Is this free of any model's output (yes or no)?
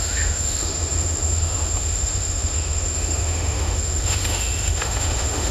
no